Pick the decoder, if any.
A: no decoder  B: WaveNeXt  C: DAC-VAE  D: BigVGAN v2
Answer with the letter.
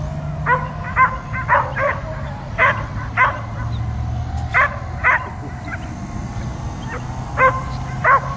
A